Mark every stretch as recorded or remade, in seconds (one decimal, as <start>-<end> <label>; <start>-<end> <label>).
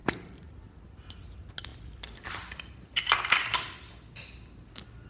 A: 0.0-0.7 remade; 0.7-5.1 recorded